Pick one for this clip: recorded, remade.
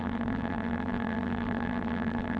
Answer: remade